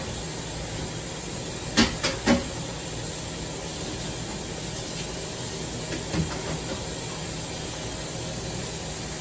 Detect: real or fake real